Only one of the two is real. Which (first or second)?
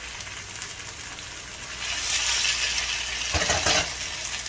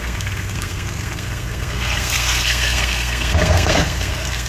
first